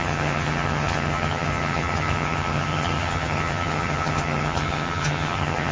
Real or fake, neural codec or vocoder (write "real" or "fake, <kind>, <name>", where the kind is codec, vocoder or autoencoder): fake, vocoder, HiFi-GAN